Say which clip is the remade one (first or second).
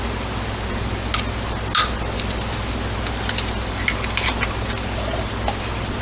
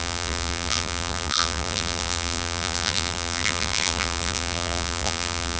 second